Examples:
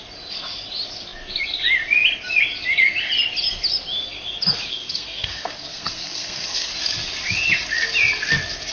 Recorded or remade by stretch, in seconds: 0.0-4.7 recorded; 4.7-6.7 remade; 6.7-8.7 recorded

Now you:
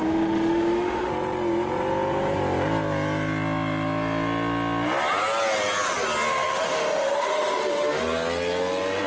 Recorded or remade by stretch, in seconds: 0.0-1.1 remade; 1.1-6.3 recorded; 6.3-8.0 remade; 8.0-9.1 recorded

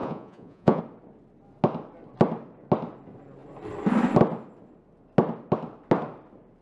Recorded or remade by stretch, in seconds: 0.0-0.8 remade; 0.8-6.6 recorded

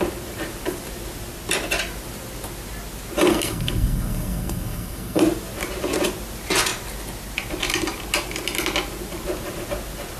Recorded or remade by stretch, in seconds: 0.0-3.3 recorded; 3.3-5.2 remade; 5.2-10.2 recorded